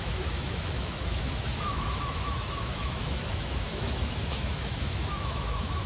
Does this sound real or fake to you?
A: fake